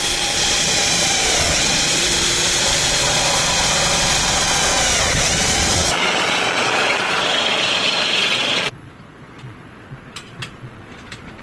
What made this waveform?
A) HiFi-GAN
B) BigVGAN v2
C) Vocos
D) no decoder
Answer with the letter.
C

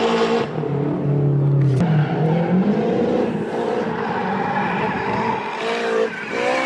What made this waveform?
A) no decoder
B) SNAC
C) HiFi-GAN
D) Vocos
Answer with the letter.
A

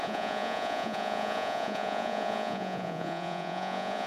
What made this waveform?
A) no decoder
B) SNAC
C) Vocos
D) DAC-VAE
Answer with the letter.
C